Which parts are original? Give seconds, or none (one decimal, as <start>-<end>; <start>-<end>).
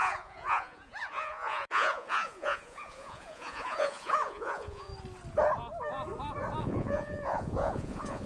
4.9-6.6